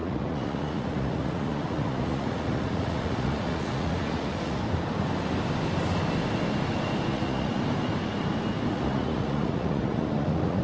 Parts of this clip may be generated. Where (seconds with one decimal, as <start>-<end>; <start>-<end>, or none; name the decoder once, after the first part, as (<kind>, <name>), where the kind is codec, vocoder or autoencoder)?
0.0-4.6 (vocoder, Vocos); 7.1-7.6; 8.7-10.6